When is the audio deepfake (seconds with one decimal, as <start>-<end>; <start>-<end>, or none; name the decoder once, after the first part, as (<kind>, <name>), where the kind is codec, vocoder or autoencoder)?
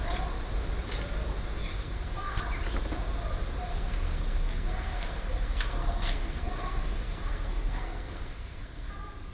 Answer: 1.6-2.4 (codec, SNAC); 3.7-8.9